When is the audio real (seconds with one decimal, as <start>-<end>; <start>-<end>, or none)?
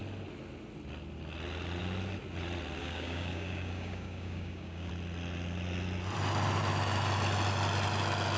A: 0.0-2.8; 4.9-8.4